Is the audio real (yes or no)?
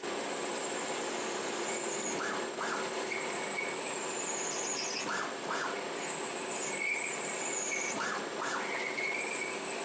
yes